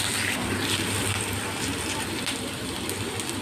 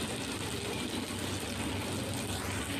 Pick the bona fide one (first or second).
second